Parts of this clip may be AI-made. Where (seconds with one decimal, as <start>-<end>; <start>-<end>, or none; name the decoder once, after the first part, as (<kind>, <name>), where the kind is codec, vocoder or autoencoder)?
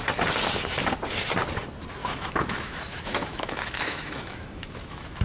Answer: 2.0-5.2 (autoencoder, DAC-VAE)